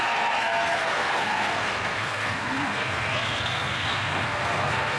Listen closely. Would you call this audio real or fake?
fake